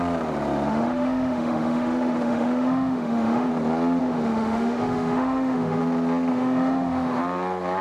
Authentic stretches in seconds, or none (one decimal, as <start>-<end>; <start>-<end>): 0.0-0.7; 3.5-4.0; 5.8-6.3; 7.2-7.8